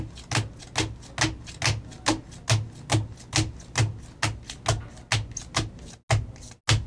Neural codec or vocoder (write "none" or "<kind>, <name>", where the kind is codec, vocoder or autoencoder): none